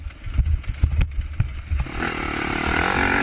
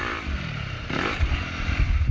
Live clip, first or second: first